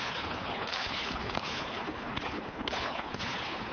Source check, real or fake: fake